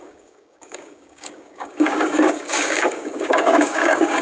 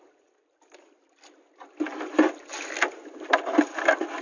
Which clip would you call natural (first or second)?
second